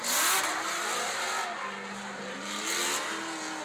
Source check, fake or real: real